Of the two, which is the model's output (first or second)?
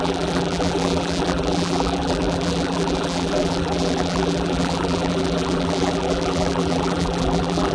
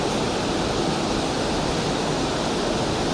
first